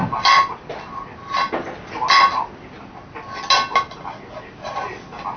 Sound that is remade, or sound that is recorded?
recorded